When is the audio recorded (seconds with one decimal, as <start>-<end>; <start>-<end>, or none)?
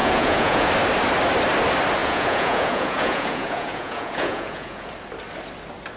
0.7-2.0; 4.9-6.0